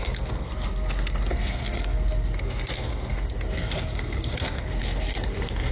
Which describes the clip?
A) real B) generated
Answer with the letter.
B